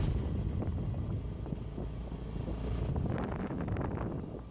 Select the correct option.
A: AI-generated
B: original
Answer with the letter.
B